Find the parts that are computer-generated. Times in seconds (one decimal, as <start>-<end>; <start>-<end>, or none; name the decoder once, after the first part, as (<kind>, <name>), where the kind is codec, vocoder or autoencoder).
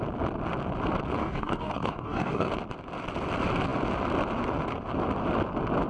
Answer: 1.2-2.5 (codec, DAC)